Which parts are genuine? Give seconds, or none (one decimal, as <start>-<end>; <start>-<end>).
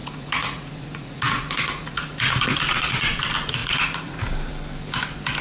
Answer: 3.2-3.6; 4.2-5.4